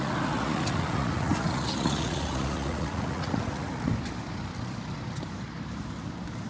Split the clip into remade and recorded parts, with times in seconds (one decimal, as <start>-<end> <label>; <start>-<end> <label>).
0.0-3.9 remade; 3.9-6.5 recorded